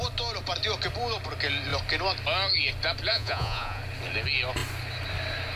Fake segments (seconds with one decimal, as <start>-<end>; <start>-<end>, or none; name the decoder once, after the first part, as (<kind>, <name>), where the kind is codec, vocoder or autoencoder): 3.1-3.8 (vocoder, Vocos)